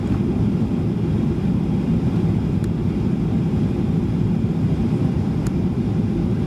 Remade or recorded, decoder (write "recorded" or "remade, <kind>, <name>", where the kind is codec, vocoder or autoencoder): remade, vocoder, BigVGAN v2